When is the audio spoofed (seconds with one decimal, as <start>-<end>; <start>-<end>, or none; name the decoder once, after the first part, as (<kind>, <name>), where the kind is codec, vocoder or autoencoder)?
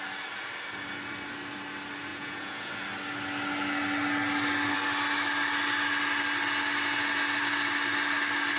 2.1-2.7 (vocoder, Vocos)